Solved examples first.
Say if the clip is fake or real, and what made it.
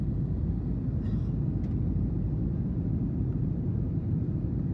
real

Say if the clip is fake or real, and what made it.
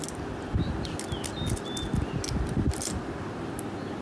real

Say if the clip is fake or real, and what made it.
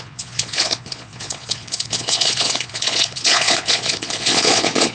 fake, vocoder, Vocos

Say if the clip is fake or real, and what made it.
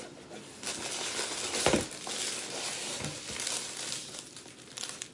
real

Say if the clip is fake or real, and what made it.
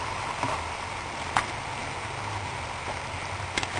real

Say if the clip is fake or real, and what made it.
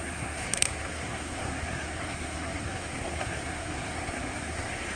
fake, codec, SNAC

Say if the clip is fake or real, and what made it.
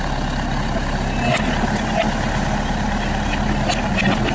real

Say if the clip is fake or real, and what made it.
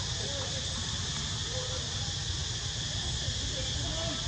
real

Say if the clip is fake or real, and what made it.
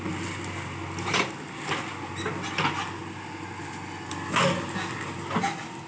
real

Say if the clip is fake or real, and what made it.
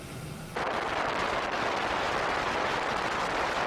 real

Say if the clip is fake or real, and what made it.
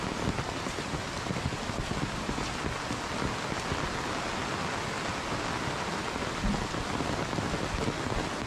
real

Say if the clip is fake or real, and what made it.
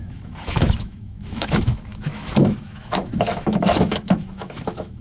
fake, autoencoder, DAC-VAE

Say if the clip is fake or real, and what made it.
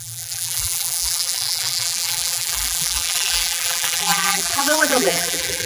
fake, vocoder, BigVGAN v2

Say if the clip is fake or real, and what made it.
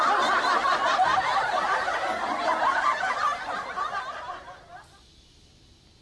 real